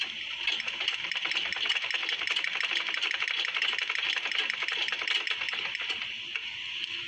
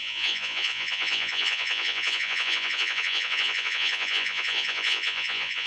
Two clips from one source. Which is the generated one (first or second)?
second